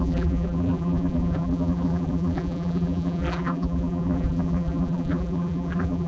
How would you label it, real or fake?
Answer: fake